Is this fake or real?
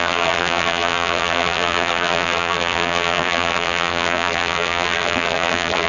fake